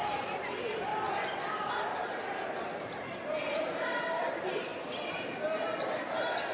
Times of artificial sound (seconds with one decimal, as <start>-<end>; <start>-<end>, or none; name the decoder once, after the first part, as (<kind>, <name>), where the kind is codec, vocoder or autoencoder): 0.0-0.9 (vocoder, BigVGAN v2); 1.7-4.7